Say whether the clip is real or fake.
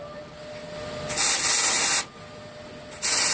real